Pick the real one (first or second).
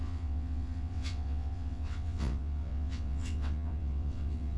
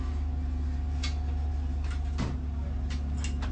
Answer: second